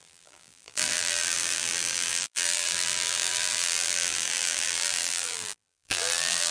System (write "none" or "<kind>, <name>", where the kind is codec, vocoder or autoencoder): vocoder, BigVGAN v2